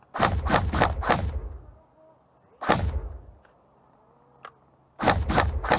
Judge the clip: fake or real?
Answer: real